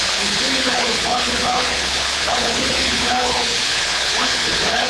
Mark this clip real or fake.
fake